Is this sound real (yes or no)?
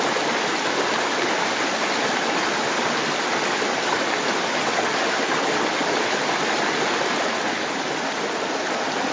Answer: yes